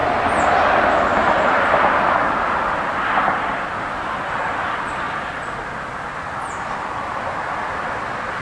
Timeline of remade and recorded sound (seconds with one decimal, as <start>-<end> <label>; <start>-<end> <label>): 0.0-8.4 recorded